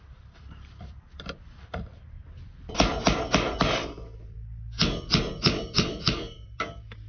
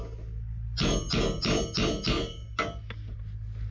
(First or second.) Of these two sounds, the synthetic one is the first